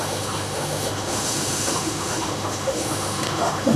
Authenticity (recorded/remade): remade